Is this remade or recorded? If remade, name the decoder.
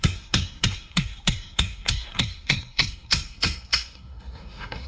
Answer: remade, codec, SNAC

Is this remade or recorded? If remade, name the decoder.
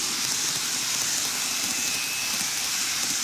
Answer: recorded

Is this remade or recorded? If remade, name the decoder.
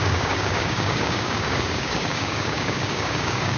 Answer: remade, codec, DAC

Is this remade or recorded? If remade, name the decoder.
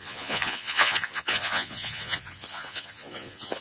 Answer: remade, vocoder, Vocos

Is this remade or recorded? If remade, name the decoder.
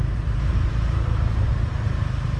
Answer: remade, vocoder, BigVGAN v2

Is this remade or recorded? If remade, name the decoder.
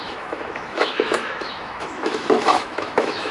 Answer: remade, autoencoder, DAC-VAE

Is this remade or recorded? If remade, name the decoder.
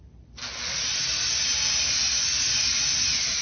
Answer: recorded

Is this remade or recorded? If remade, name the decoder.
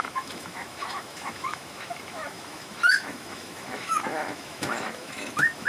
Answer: remade, autoencoder, DAC-VAE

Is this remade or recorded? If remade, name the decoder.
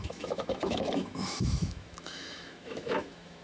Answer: remade, autoencoder, DAC-VAE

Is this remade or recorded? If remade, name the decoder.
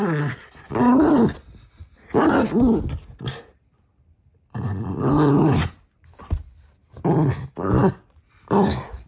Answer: recorded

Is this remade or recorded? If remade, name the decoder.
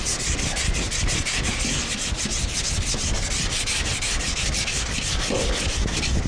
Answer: recorded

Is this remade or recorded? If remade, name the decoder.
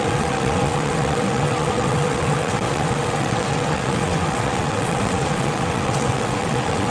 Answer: remade, vocoder, WaveNeXt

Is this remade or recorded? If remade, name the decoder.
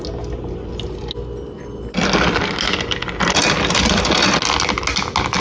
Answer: recorded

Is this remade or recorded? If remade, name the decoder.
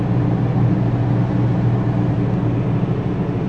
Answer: recorded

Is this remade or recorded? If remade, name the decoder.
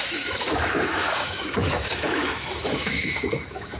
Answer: remade, autoencoder, DAC-VAE